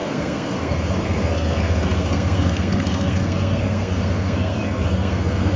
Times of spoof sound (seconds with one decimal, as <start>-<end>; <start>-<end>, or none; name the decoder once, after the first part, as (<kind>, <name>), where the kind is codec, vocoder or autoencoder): 0.0-5.6 (codec, SNAC)

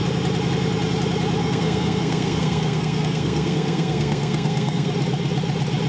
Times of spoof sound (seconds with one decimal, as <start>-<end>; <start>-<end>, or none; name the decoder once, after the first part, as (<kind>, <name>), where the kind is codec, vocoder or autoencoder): 1.4-4.9 (codec, SNAC)

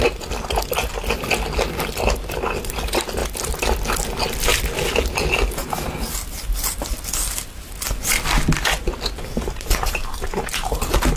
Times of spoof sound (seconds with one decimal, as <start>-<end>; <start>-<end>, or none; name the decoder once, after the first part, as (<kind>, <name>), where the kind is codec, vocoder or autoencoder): none

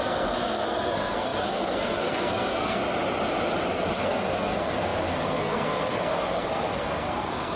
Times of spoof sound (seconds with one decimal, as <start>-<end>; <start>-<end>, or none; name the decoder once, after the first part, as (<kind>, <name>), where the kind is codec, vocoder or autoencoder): 0.0-2.8 (codec, SNAC); 4.0-7.6

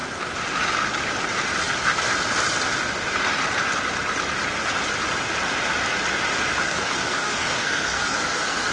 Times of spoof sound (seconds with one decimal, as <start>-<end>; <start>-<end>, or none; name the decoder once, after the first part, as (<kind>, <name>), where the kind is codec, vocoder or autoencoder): 6.6-8.7 (codec, SNAC)

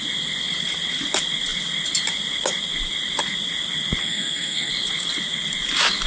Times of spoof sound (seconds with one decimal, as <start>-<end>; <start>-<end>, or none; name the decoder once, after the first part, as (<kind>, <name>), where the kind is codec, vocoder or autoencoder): 4.0-4.7 (codec, SNAC)

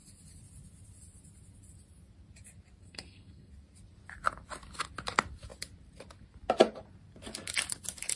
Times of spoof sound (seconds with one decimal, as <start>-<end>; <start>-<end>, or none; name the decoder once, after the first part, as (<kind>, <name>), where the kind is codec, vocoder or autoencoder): 2.8-3.5 (codec, SNAC)

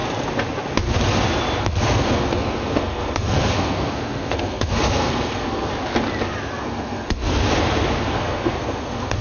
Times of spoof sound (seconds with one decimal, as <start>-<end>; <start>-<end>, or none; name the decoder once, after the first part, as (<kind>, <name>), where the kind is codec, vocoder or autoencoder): 1.6-5.7 (codec, SNAC); 6.6-7.3; 8.0-9.2